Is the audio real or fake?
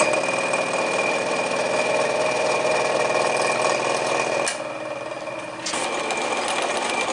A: real